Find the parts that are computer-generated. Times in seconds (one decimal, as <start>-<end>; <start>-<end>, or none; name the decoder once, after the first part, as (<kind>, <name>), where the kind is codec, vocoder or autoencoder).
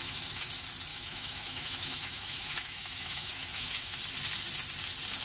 0.0-0.5 (autoencoder, DAC-VAE); 0.9-4.0